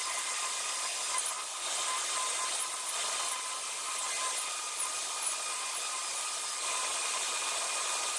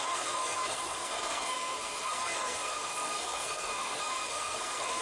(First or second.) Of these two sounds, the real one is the first